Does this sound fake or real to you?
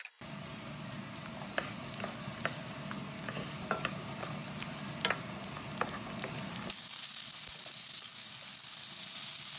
real